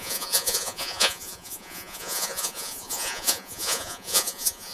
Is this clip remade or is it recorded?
remade